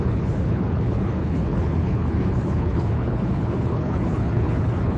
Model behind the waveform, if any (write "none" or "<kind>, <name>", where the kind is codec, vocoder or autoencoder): codec, HILCodec